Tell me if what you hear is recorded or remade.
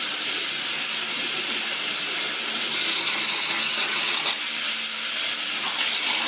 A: recorded